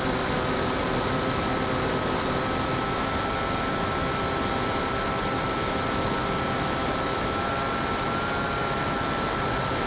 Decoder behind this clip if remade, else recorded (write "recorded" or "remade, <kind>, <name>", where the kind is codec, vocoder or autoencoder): recorded